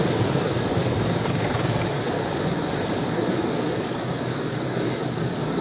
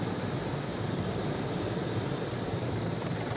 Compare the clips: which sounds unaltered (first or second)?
second